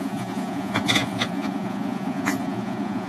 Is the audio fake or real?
fake